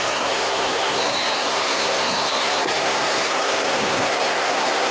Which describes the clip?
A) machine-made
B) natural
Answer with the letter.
A